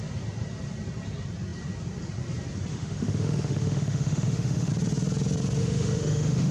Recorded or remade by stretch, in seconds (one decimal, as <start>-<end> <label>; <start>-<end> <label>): 0.0-2.7 recorded; 2.7-4.7 remade; 4.7-5.6 recorded; 5.6-6.5 remade